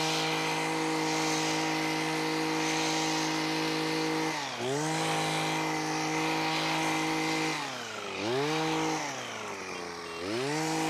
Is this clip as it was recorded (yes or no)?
yes